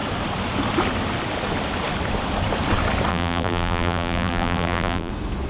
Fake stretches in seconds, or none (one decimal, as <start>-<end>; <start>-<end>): 3.1-5.1